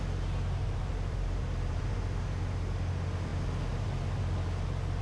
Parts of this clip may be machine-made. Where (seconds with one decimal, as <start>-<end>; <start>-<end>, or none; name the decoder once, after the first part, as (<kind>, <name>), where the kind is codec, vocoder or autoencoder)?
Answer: 0.6-1.8 (vocoder, BigVGAN v2)